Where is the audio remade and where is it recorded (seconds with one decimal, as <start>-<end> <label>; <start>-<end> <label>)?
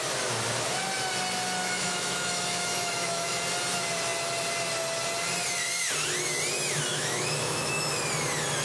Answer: 0.0-1.6 recorded; 1.6-3.4 remade; 3.4-6.9 recorded; 6.9-7.9 remade; 7.9-8.6 recorded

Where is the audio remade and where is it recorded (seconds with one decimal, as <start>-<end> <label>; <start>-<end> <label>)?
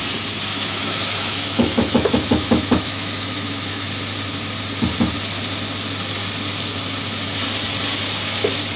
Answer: 0.0-0.5 recorded; 0.5-3.9 remade; 3.9-8.8 recorded